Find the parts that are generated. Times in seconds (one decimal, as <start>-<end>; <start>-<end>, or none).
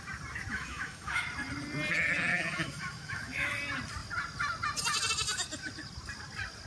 0.5-1.2; 2.3-3.5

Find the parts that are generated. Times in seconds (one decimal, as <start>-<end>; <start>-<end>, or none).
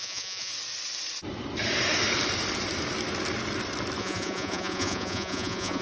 0.0-0.5; 4.0-5.8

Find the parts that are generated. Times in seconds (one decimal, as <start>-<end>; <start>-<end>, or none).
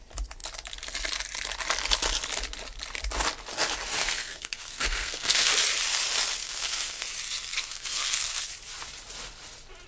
4.0-5.5; 6.4-7.1; 7.5-8.5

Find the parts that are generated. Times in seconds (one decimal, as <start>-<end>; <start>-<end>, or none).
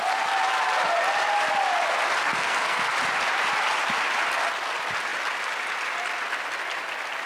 2.2-2.9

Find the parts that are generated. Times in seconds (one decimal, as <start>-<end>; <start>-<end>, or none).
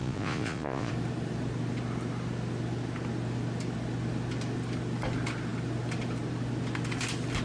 0.0-0.9